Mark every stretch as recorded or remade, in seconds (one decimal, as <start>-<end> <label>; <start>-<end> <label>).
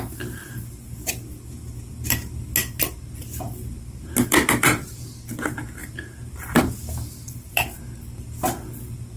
0.0-3.6 recorded; 3.6-5.1 remade; 5.1-5.8 recorded; 5.8-7.8 remade; 7.8-9.2 recorded